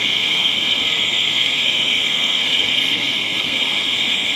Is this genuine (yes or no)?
no